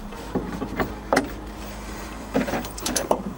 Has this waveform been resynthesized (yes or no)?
yes